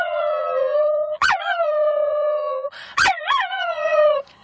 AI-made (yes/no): yes